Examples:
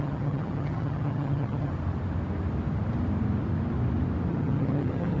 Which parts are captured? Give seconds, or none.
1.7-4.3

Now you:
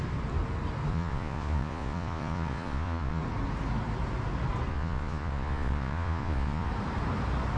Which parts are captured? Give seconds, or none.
0.0-0.9; 3.2-4.7; 6.7-7.6

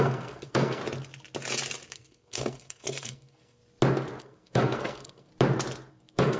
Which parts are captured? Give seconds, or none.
0.8-1.9; 3.6-4.2; 5.3-5.9

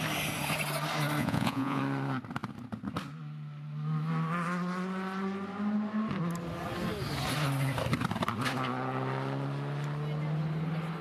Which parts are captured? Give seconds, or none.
0.0-1.2; 1.8-11.0

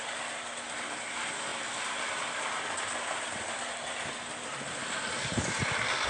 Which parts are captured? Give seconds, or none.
0.0-6.1

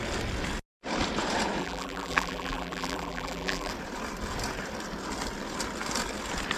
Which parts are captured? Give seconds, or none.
0.0-1.6; 3.7-6.6

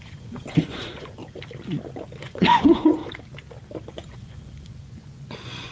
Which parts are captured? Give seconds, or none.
1.2-2.2; 3.0-3.9

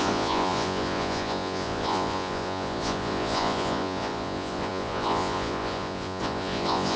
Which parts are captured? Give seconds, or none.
none